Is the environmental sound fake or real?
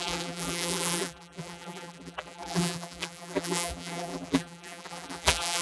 fake